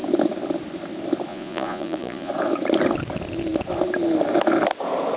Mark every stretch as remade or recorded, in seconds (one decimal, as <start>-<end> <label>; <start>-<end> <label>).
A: 0.0-1.3 recorded; 1.3-2.3 remade; 2.3-5.2 recorded